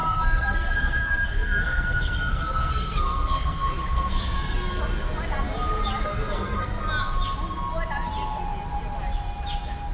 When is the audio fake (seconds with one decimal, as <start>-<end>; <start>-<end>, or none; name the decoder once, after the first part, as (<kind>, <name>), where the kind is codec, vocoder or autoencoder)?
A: 0.0-4.8 (codec, SNAC); 6.1-6.8